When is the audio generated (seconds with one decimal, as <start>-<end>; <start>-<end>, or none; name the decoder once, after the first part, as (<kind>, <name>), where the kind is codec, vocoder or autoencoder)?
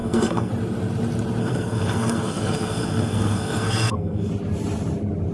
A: 0.0-0.5 (codec, SNAC); 1.4-4.3